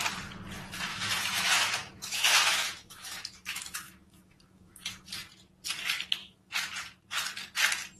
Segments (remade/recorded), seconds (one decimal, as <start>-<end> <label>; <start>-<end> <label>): 0.0-0.9 recorded; 0.9-5.1 remade; 5.1-6.2 recorded; 6.2-6.7 remade; 6.7-8.0 recorded

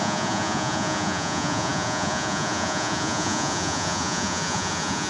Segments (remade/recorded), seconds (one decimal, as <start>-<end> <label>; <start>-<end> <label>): 0.0-5.1 remade

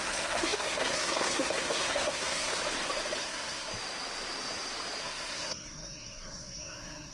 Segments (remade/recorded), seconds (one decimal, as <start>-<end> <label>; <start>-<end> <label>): 0.0-2.6 remade; 2.6-3.2 recorded; 3.2-3.7 remade; 3.7-5.0 recorded; 5.0-7.1 remade

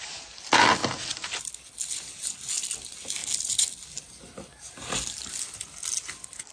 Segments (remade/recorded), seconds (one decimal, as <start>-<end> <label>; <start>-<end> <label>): 0.0-6.5 recorded

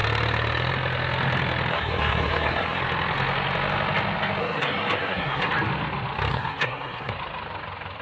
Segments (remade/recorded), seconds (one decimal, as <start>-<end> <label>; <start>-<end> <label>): 0.0-1.7 recorded; 1.7-2.8 remade; 2.8-4.4 recorded; 4.4-5.5 remade; 5.5-6.3 recorded; 6.3-7.1 remade; 7.1-8.0 recorded